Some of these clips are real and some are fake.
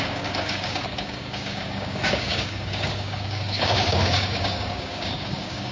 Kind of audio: fake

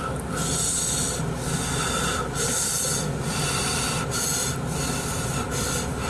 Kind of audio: real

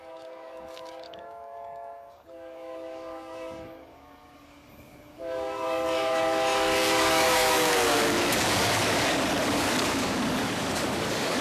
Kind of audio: fake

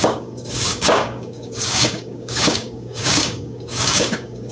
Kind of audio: fake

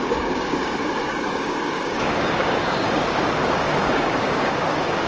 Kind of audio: fake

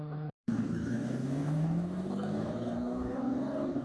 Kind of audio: fake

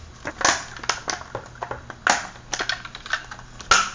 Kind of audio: real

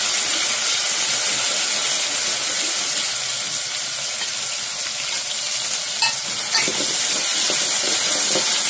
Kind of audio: real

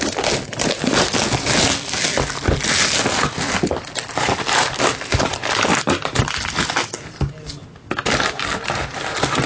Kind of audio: real